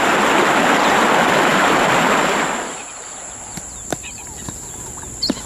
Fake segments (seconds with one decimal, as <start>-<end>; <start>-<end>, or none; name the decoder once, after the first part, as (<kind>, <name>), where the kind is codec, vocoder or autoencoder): 1.5-4.8 (vocoder, BigVGAN v2)